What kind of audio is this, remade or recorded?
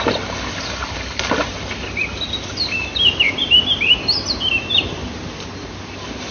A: recorded